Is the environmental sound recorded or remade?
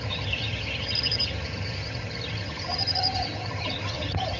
remade